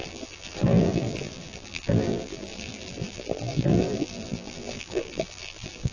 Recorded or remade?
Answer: remade